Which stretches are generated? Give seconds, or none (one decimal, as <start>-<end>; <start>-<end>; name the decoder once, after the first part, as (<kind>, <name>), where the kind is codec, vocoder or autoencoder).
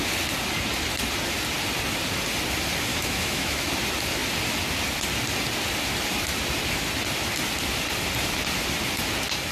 2.9-3.7 (autoencoder, DAC-VAE)